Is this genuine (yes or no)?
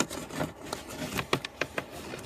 yes